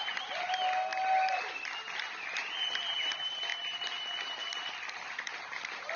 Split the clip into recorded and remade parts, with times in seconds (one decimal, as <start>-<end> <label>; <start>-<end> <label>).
0.0-6.0 recorded